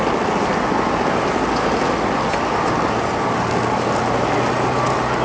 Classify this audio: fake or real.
real